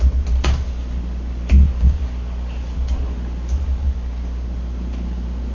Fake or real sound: real